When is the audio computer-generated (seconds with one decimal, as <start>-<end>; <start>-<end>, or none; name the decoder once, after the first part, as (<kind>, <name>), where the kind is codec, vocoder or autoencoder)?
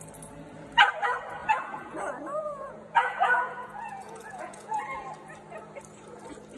1.4-4.8 (vocoder, Vocos)